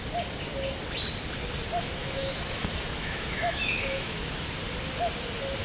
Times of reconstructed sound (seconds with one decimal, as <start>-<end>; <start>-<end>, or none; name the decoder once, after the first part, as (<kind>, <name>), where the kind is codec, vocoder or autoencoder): 2.0-4.2 (autoencoder, DAC-VAE)